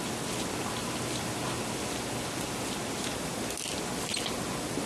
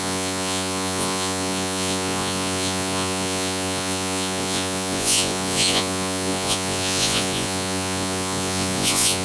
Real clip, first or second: first